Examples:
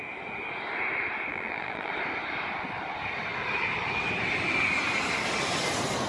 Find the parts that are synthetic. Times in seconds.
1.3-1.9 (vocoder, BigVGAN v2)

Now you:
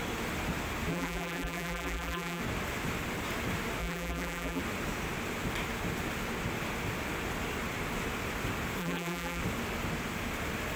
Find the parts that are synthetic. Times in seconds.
0.9-2.4 (vocoder, BigVGAN v2); 3.8-4.6; 8.8-9.4

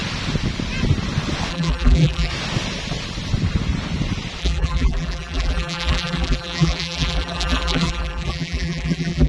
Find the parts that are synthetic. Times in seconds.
1.5-2.3 (vocoder, BigVGAN v2); 4.4-9.3